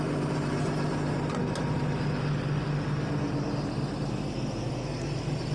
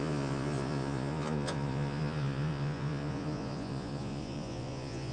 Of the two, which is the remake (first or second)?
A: second